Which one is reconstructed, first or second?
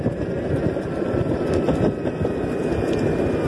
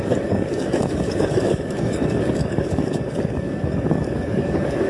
second